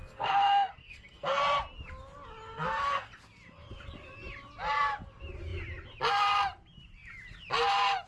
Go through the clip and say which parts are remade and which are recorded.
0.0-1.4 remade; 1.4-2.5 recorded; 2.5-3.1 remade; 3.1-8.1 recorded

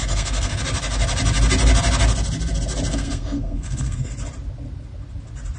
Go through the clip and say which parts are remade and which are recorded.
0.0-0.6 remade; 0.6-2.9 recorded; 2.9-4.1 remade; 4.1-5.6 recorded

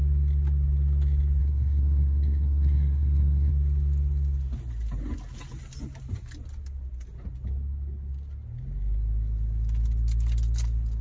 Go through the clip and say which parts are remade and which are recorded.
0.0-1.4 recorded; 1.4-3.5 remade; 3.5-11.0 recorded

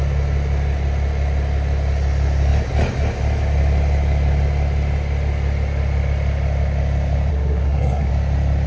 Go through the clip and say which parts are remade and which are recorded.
0.0-7.3 recorded; 7.3-8.1 remade; 8.1-8.7 recorded

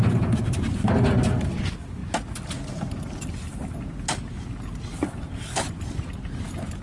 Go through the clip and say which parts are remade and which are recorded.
0.0-6.8 recorded

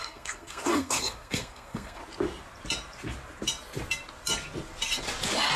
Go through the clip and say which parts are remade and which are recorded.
0.0-2.0 remade; 2.0-5.6 recorded

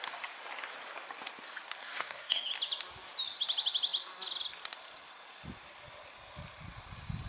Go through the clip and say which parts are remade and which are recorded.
0.0-1.8 recorded; 1.8-2.5 remade; 2.5-7.3 recorded